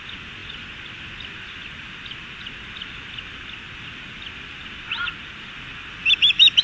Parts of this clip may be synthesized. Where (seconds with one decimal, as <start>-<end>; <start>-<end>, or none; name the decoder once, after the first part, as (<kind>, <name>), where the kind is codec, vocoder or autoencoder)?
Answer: none